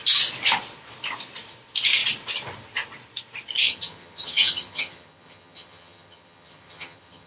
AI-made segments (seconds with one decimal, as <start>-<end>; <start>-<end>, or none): 3.7-7.3